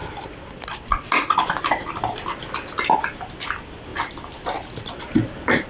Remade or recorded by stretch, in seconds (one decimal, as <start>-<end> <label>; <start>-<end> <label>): 0.0-5.7 recorded